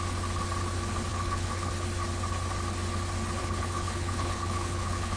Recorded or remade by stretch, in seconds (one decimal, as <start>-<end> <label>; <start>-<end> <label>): 0.0-1.1 recorded; 1.1-1.7 remade; 1.7-3.4 recorded; 3.4-5.2 remade